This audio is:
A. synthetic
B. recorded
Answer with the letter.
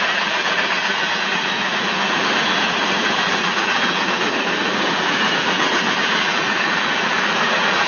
A